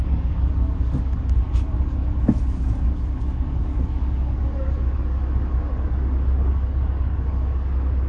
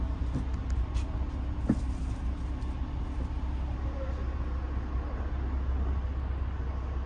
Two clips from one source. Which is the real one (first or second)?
second